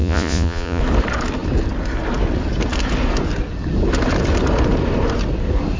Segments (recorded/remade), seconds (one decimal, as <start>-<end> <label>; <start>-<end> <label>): 0.0-0.8 remade; 0.8-5.8 recorded